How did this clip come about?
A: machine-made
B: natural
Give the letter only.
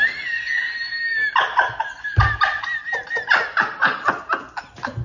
B